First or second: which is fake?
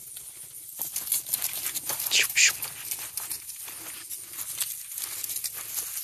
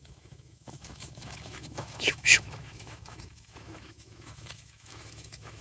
second